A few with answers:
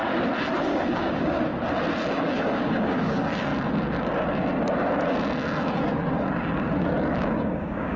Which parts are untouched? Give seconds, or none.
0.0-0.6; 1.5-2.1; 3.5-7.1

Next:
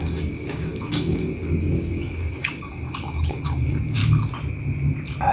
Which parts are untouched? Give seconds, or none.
4.0-5.3

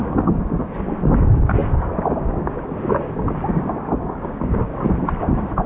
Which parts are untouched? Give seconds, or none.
4.7-5.2

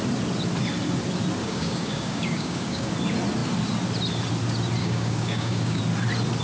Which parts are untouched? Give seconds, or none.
0.0-1.4; 2.9-4.8; 5.8-6.4

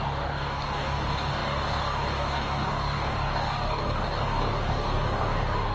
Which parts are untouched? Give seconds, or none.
none